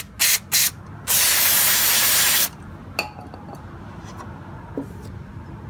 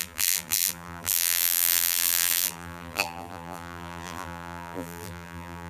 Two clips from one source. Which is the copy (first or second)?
second